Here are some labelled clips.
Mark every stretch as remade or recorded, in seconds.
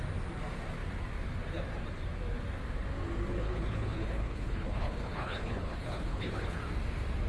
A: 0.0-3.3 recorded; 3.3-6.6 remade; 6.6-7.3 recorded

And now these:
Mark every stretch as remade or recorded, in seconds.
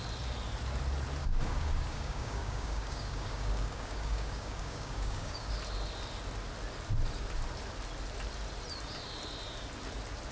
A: 0.0-1.2 recorded; 1.2-5.5 remade; 5.5-10.3 recorded